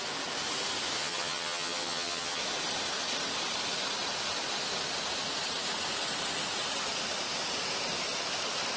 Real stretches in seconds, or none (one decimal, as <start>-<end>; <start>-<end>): 0.0-1.0; 2.4-8.8